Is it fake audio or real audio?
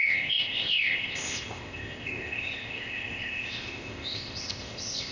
fake